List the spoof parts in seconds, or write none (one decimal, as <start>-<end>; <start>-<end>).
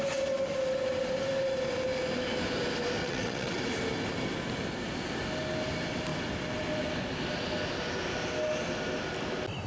3.0-3.6